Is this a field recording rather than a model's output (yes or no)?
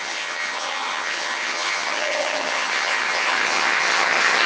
no